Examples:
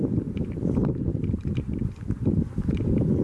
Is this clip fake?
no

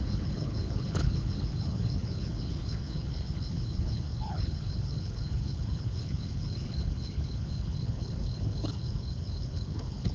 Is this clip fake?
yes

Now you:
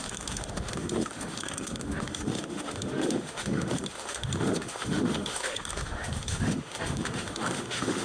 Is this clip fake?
yes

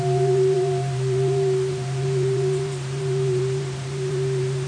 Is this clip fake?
yes